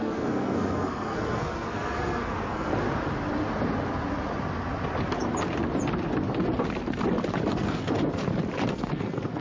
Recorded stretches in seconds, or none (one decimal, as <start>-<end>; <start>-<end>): 2.7-7.5; 8.2-8.7